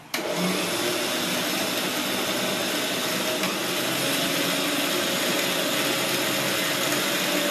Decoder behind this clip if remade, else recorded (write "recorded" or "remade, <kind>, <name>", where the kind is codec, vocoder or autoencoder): recorded